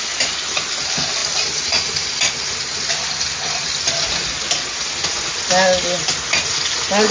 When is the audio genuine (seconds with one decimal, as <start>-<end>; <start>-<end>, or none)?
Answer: 0.0-7.1

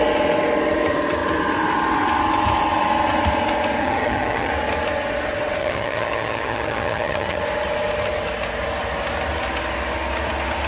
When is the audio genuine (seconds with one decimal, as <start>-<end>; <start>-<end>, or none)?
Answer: 0.0-3.8; 4.5-5.6; 7.4-10.7

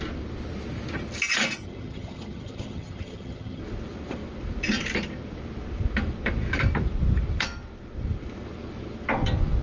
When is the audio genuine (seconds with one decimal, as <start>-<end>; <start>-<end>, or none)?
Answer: 0.0-1.6; 3.6-9.6

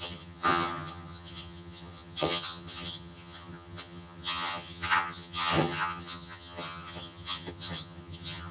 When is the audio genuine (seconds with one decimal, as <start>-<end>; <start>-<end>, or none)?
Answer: none

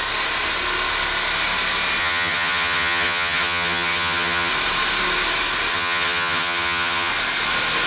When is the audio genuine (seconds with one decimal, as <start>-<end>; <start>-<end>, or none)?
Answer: 0.0-2.0; 4.5-5.7; 7.1-7.9